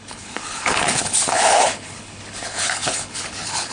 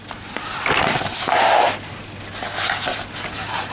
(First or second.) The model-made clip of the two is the first